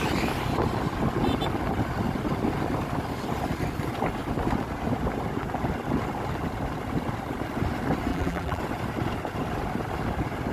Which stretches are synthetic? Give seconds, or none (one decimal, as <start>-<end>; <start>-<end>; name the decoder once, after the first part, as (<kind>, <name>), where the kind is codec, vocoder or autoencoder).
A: 8.1-8.6 (vocoder, BigVGAN v2)